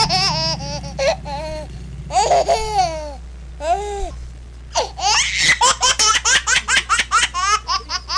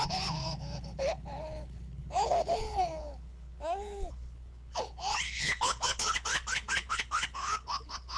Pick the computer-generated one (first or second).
second